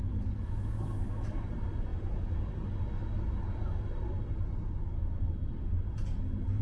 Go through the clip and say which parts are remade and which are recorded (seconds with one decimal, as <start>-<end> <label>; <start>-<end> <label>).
0.0-1.5 remade; 1.5-6.6 recorded